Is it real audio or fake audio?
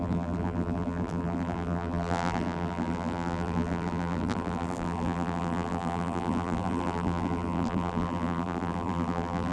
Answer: fake